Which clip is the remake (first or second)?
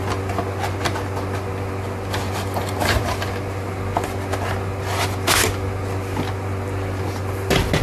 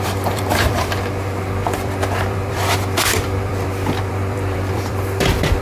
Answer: second